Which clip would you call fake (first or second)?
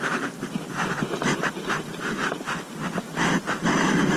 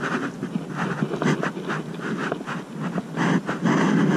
first